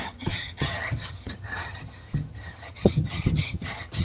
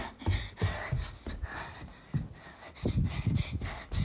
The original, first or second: second